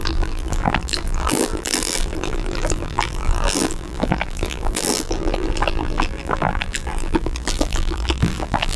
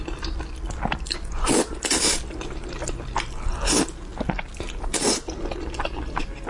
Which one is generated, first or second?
first